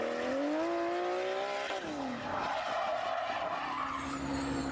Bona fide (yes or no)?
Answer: yes